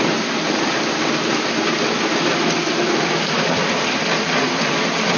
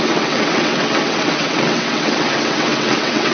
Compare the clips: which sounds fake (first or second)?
second